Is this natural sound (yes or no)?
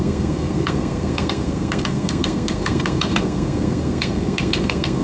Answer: no